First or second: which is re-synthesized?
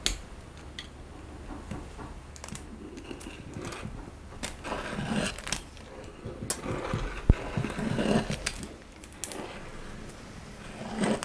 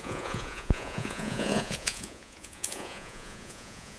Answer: second